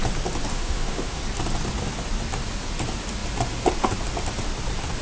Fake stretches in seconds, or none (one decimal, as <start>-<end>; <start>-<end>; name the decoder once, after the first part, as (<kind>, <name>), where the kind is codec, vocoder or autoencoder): 0.5-1.2 (autoencoder, DAC-VAE)